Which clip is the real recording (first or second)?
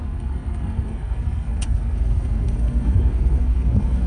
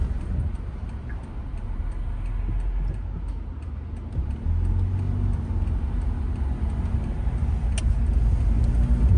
second